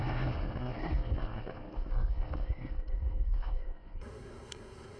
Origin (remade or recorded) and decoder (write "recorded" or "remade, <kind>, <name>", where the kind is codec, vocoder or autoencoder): remade, codec, SNAC